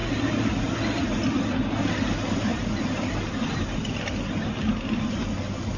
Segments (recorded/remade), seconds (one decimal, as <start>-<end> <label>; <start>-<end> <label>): 0.0-5.8 recorded